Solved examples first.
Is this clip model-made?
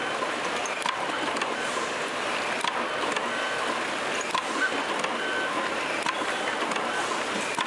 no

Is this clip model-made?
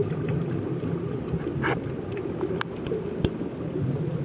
no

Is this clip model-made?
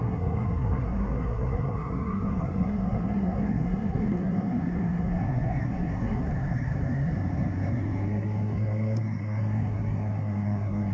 yes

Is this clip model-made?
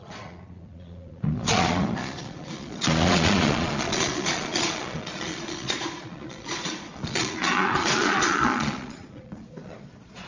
yes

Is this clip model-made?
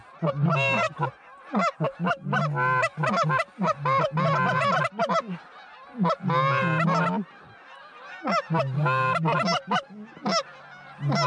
no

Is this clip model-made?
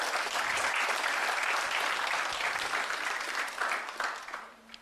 no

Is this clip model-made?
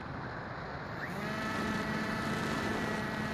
no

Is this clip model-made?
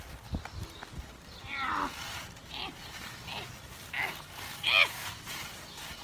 no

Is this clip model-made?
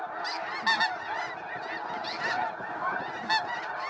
no